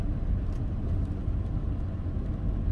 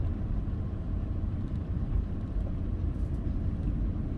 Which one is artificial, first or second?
second